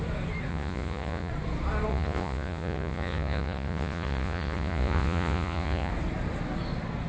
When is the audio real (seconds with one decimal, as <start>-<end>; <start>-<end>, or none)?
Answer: 0.0-0.5; 1.3-1.9; 5.9-7.1